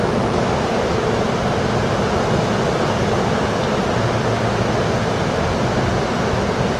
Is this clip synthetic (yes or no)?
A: no